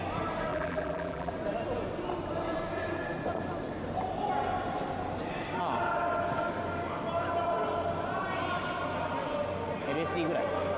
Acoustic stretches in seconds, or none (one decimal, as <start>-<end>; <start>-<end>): 0.0-0.5; 1.3-10.8